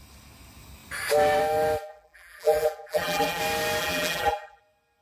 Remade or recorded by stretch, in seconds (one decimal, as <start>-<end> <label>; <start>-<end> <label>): 0.0-1.9 recorded; 1.9-3.4 remade; 3.4-3.8 recorded; 3.8-4.6 remade; 4.6-5.0 recorded